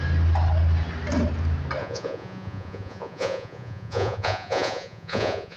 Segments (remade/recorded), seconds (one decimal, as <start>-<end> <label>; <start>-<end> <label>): 0.0-1.8 recorded; 1.8-5.6 remade